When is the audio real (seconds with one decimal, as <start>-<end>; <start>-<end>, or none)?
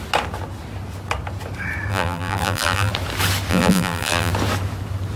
0.0-1.9; 2.9-3.5; 4.3-5.2